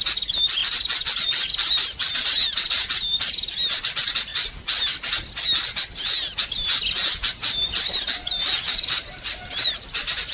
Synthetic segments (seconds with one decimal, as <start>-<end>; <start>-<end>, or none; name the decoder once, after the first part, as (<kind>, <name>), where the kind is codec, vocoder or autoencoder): 0.6-1.3 (vocoder, BigVGAN v2); 2.0-2.6